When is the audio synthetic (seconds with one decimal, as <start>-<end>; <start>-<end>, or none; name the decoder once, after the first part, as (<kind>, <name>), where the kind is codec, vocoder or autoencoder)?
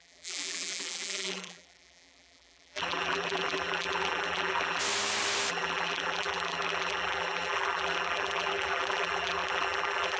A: 0.0-4.8 (vocoder, BigVGAN v2); 5.5-10.2